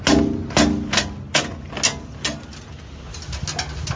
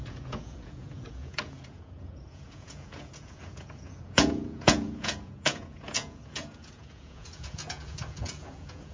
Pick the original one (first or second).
first